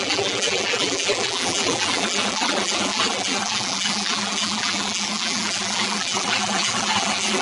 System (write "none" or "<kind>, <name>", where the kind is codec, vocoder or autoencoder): vocoder, BigVGAN v2